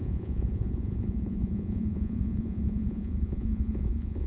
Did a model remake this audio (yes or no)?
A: yes